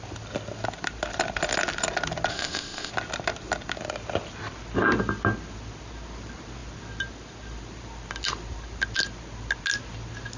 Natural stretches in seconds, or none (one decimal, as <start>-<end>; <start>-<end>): 0.0-2.3; 2.9-10.4